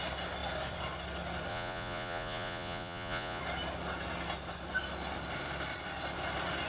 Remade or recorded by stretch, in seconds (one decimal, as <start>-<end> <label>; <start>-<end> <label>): 0.0-1.5 recorded; 1.5-3.4 remade; 3.4-6.7 recorded